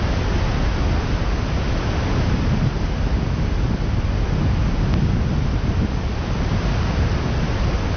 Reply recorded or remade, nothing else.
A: recorded